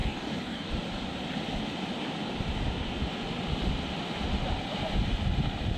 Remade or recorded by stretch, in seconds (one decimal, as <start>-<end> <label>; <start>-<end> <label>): 0.0-0.7 remade; 0.7-5.8 recorded